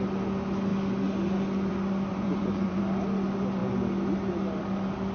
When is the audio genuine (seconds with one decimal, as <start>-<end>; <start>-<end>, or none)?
0.0-2.1; 2.8-5.1